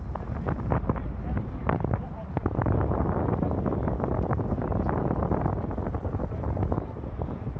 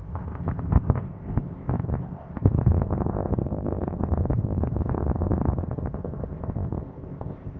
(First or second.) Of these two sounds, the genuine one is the first